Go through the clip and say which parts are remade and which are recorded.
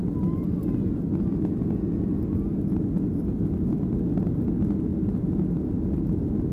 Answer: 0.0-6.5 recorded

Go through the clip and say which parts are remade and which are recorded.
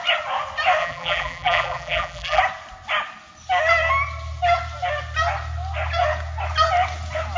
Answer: 0.0-0.8 recorded; 0.8-2.4 remade; 2.4-7.4 recorded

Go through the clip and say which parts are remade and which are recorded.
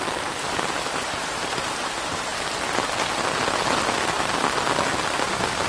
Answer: 0.0-5.7 recorded